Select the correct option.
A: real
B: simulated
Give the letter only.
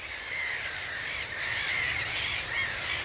B